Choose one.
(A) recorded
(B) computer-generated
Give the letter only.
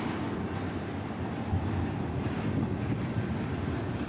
B